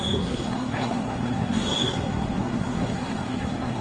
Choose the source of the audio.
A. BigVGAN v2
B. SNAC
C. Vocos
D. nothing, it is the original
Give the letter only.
B